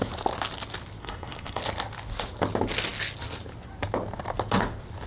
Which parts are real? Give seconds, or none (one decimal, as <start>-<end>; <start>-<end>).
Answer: 0.0-1.0; 1.6-5.1